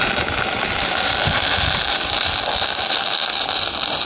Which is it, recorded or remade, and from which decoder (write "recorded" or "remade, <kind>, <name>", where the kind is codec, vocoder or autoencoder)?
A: recorded